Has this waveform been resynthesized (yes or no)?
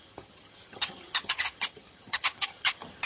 yes